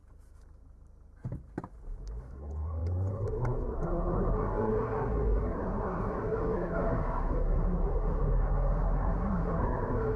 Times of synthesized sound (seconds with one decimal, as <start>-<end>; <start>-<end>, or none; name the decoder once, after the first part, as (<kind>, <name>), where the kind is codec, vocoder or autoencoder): 2.2-10.2 (codec, SNAC)